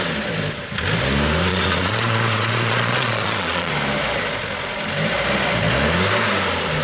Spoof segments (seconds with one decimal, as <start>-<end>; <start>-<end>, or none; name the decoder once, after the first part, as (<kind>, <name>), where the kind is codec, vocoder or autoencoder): 1.5-3.7 (vocoder, Vocos)